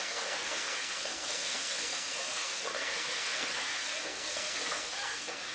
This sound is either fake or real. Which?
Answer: fake